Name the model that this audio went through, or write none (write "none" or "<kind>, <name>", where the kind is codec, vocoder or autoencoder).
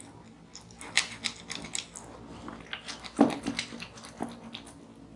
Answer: none